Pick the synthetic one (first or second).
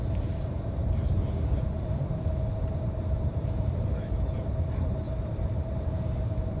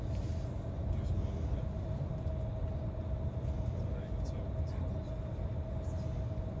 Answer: first